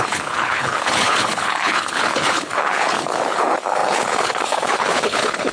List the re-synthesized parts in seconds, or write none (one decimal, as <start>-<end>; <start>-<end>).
0.0-5.5